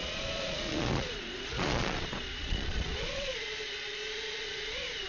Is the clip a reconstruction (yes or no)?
yes